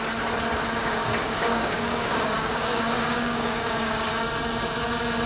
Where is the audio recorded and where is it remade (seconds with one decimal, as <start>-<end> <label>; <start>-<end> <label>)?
0.0-0.8 recorded; 0.8-4.0 remade; 4.0-5.3 recorded